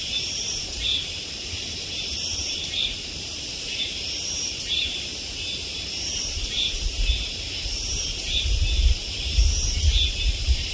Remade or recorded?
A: remade